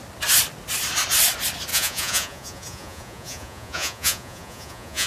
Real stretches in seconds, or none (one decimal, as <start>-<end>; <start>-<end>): 0.0-1.7